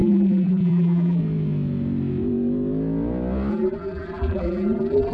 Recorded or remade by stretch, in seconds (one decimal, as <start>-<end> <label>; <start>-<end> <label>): 0.0-1.2 remade; 1.2-3.5 recorded; 3.5-5.1 remade